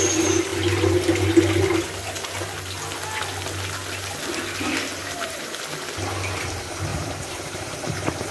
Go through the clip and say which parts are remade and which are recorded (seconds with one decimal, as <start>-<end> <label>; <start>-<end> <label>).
0.0-5.0 recorded; 5.0-5.6 remade; 5.6-6.9 recorded; 6.9-8.3 remade